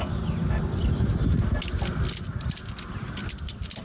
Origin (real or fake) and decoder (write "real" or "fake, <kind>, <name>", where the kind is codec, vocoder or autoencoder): real